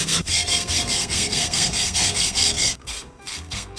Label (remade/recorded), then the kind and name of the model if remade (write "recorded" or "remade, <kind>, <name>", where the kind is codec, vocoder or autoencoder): remade, codec, SNAC